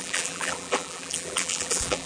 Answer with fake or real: fake